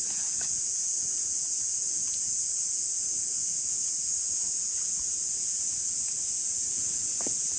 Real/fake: fake